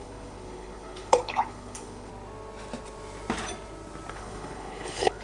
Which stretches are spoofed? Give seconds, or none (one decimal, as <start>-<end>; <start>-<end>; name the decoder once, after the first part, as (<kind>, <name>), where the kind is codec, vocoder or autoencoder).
0.0-2.1 (codec, HILCodec); 4.1-5.2